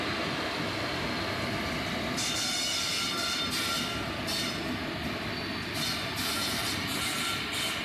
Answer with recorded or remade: recorded